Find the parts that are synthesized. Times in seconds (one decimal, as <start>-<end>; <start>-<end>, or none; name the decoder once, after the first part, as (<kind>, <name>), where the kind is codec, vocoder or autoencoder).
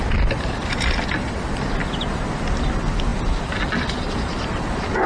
none